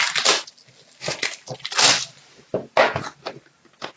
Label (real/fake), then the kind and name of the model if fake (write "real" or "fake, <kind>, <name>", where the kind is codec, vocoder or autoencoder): real